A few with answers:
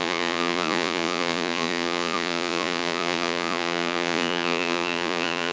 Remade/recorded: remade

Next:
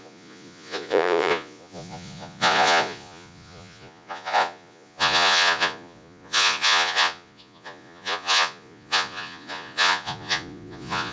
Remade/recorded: remade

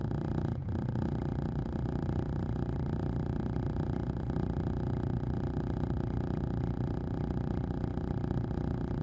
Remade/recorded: remade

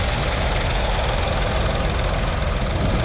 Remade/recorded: recorded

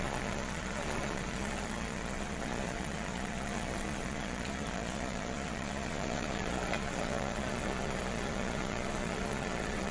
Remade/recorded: remade